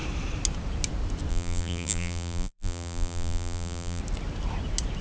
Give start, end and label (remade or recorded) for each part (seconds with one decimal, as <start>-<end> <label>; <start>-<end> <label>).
0.0-1.3 recorded; 1.3-4.0 remade; 4.0-5.0 recorded